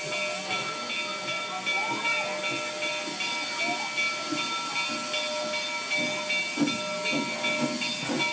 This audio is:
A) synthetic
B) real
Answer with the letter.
B